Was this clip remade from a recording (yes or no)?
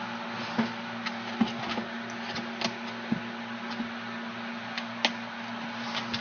no